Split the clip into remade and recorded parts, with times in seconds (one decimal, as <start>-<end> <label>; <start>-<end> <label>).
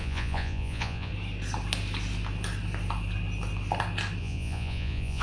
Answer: 0.0-1.1 remade; 1.1-4.2 recorded; 4.2-5.2 remade